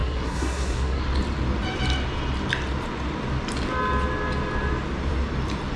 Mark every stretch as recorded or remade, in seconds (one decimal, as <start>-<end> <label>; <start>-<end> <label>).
0.0-1.0 remade; 1.0-5.8 recorded